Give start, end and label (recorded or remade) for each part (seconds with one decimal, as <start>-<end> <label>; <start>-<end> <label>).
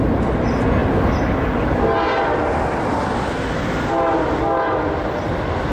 0.0-5.7 recorded